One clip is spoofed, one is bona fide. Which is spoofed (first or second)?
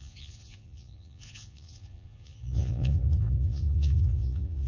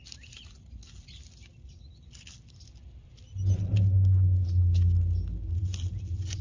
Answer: first